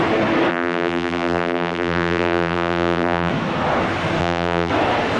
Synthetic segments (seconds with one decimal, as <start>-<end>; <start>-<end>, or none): 0.5-3.3; 4.2-4.7

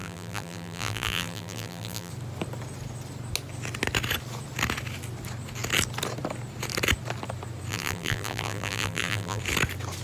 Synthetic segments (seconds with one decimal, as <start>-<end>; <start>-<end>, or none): 0.0-2.1; 7.7-9.4

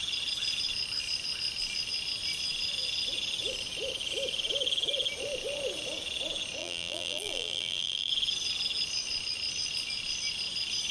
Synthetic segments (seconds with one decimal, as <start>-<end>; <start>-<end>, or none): 6.6-8.1

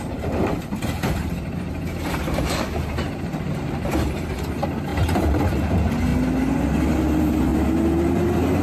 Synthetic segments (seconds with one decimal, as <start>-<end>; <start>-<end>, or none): 0.0-6.1; 6.8-7.5

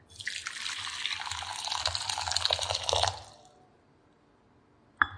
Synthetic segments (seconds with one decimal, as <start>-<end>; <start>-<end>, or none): 0.4-1.0

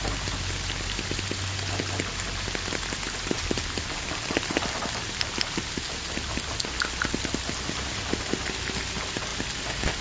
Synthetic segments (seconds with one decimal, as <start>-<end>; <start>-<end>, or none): none